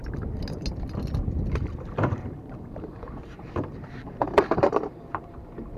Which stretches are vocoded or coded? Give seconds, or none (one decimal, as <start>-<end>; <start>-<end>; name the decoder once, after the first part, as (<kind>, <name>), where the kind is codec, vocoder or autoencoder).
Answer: 0.0-0.4 (vocoder, BigVGAN v2); 1.2-5.8